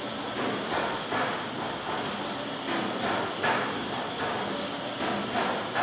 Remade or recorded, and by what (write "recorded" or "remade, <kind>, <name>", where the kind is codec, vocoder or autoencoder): recorded